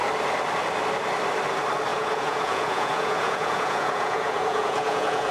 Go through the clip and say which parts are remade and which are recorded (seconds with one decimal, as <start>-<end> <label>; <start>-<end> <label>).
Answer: 0.0-1.9 recorded; 1.9-5.3 remade